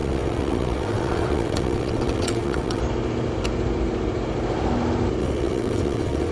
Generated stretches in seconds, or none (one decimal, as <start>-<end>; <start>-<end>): 0.0-2.8; 5.2-6.3